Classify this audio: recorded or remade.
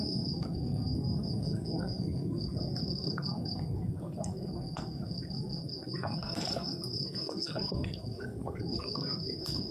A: remade